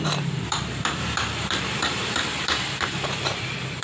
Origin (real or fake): fake